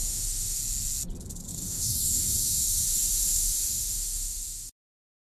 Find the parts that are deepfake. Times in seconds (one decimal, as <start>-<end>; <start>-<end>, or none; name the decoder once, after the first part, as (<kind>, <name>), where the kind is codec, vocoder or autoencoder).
0.0-0.6 (autoencoder, DAC-VAE); 1.5-4.7